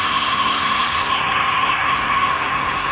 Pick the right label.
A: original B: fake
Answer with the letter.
B